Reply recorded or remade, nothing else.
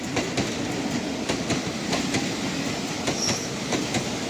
recorded